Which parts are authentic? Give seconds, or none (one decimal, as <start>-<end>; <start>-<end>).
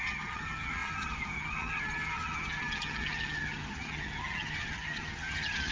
none